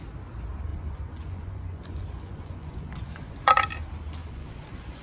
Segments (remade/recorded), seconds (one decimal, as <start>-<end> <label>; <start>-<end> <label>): 0.0-0.7 recorded; 0.7-3.7 remade; 3.7-4.2 recorded; 4.2-5.0 remade